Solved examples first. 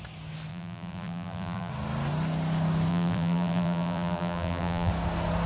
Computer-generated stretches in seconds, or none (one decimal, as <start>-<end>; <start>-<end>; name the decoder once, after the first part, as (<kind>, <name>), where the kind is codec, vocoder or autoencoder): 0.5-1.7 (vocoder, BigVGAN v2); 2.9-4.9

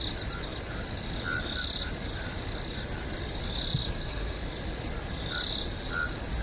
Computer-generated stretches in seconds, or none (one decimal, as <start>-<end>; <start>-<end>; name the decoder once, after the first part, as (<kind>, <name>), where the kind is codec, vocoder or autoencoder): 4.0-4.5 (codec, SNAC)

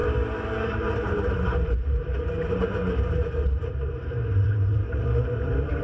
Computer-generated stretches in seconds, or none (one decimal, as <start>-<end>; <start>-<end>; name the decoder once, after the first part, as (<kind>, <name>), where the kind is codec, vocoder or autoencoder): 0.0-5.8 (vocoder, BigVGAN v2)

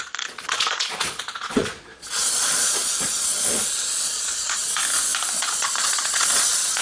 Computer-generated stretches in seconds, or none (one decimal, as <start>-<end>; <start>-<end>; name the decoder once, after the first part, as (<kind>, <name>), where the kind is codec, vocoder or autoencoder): 0.0-4.8 (vocoder, Vocos); 5.4-6.8